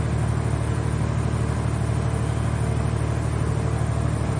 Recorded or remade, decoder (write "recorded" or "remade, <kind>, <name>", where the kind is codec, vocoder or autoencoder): recorded